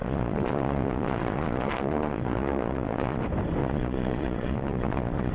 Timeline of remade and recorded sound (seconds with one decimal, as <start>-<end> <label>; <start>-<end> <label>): 0.0-3.2 remade; 3.2-3.6 recorded; 3.6-5.3 remade